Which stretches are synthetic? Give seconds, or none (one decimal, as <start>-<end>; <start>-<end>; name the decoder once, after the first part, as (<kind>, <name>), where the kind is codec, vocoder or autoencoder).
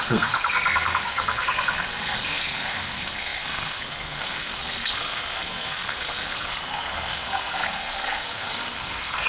0.0-9.3 (codec, SNAC)